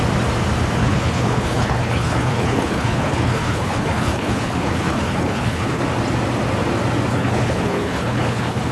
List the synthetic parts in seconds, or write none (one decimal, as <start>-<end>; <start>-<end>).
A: 0.8-5.8; 7.1-8.7